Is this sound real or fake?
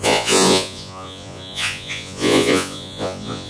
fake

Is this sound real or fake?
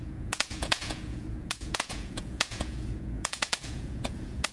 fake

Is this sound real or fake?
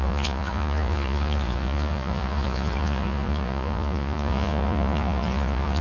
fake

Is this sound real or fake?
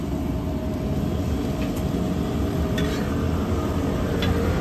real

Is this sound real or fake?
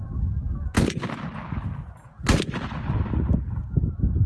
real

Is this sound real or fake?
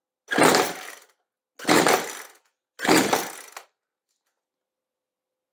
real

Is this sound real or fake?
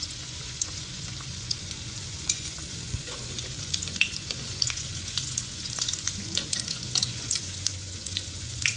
fake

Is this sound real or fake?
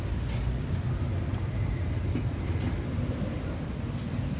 real